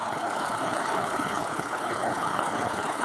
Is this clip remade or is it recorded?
remade